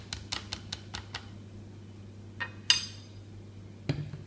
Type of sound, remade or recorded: recorded